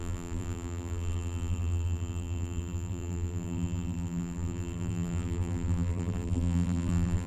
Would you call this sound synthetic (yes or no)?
yes